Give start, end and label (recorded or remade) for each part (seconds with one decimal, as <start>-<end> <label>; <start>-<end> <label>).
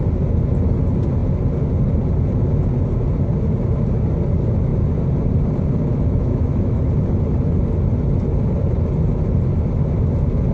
0.0-5.9 recorded; 5.9-6.9 remade; 6.9-10.5 recorded